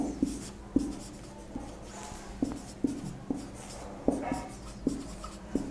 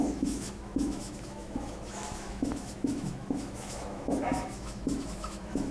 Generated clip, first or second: second